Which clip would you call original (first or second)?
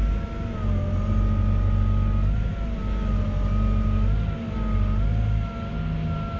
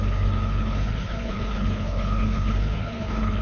first